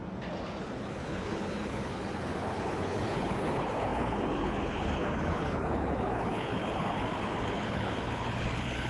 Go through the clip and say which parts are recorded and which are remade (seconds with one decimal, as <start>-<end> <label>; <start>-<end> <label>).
0.0-0.6 recorded; 0.6-8.9 remade